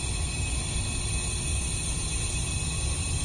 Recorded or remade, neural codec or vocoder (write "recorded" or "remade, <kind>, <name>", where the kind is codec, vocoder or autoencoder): recorded